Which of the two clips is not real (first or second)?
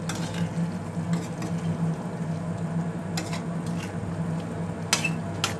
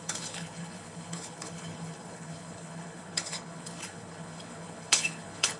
second